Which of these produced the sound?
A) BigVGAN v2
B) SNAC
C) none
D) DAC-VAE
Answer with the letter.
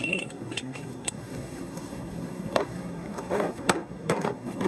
B